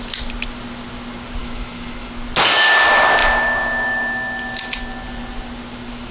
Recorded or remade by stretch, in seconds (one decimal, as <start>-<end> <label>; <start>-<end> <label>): 0.0-1.4 recorded; 1.4-2.1 remade; 2.1-6.1 recorded